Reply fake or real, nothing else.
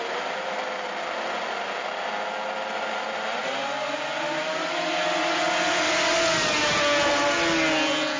real